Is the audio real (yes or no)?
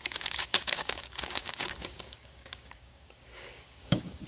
no